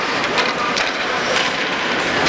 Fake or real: fake